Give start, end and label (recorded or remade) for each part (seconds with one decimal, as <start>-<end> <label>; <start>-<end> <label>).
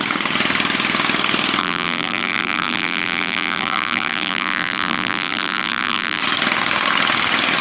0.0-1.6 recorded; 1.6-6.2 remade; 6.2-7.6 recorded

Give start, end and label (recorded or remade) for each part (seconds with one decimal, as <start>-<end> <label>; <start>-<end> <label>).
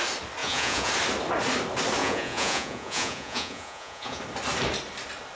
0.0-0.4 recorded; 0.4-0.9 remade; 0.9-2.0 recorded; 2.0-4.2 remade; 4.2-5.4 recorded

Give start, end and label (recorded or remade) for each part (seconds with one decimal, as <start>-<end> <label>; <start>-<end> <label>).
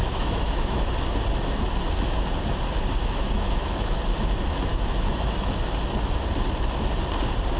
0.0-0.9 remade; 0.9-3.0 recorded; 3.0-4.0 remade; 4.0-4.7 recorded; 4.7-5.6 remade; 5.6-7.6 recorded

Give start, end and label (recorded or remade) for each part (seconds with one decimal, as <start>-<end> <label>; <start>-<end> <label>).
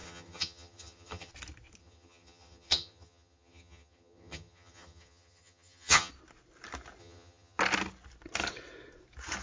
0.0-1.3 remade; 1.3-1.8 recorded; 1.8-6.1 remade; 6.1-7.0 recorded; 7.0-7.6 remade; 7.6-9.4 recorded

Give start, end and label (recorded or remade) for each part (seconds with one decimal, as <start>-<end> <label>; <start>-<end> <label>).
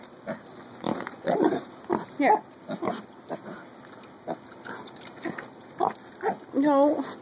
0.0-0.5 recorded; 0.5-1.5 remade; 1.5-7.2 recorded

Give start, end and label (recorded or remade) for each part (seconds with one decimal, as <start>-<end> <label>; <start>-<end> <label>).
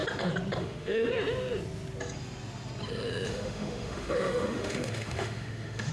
0.0-0.6 recorded; 0.6-1.1 remade; 1.1-3.3 recorded; 3.3-5.9 remade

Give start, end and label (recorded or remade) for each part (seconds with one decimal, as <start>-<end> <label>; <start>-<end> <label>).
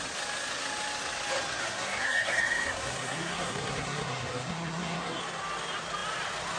0.0-1.6 recorded; 1.6-5.2 remade; 5.2-6.6 recorded